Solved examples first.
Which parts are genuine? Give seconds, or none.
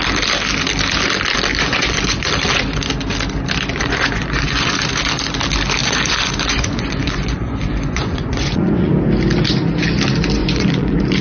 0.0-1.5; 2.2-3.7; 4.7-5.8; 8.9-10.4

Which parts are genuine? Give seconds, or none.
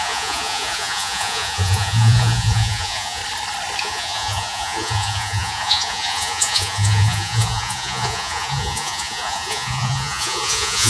3.2-3.8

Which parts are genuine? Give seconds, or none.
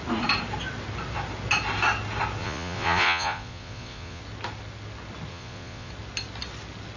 0.0-2.4; 4.2-5.3; 5.9-7.0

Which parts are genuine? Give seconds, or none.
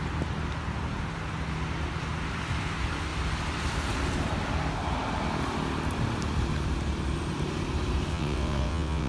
0.0-8.1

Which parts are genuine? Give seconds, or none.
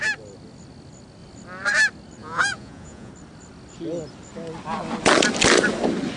0.0-2.2; 3.1-6.2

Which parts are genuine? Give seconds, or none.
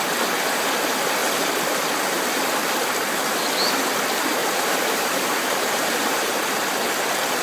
0.0-4.4; 6.0-7.4